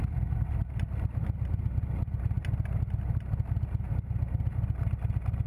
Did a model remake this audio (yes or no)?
no